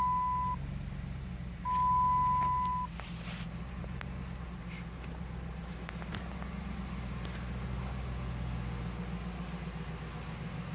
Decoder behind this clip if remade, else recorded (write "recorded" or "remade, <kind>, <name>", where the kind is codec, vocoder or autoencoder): recorded